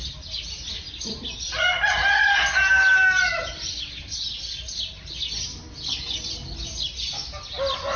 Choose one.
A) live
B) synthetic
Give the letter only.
A